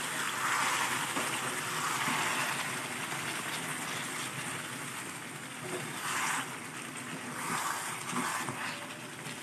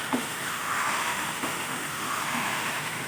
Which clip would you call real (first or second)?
first